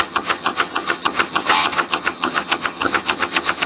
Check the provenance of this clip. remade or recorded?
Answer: remade